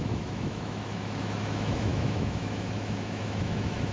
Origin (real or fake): fake